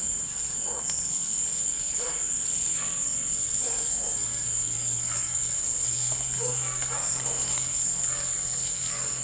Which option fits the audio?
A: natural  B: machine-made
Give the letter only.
B